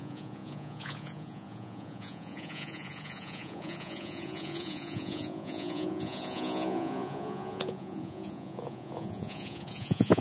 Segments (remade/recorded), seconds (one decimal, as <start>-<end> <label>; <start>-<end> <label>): 0.0-10.2 remade